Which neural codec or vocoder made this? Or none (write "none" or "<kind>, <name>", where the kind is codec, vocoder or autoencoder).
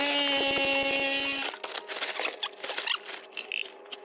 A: none